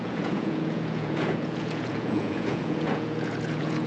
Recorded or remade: remade